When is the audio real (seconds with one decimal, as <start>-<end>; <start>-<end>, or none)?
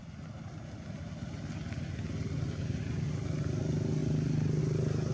0.0-5.1